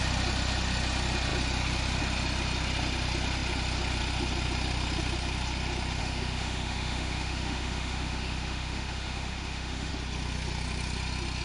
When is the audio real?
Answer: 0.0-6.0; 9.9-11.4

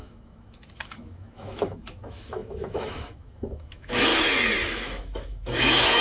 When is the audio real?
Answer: 4.1-4.7

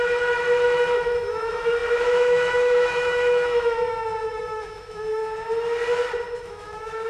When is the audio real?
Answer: 5.2-6.4

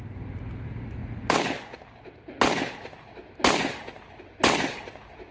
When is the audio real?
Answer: 0.0-5.3

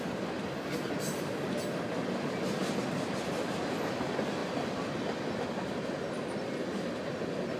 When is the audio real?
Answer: 0.0-7.6

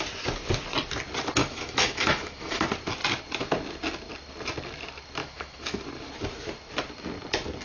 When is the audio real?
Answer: 0.0-1.4; 2.6-5.2; 5.8-7.6

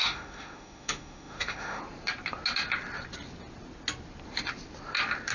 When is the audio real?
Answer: 1.8-5.3